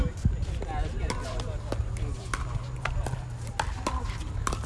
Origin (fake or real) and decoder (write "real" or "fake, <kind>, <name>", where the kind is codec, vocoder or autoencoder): real